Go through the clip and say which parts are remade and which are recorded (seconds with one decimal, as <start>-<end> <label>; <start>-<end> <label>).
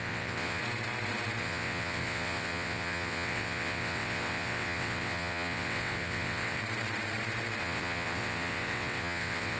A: 0.0-0.6 remade; 0.6-1.4 recorded; 1.4-6.6 remade; 6.6-7.6 recorded; 7.6-9.6 remade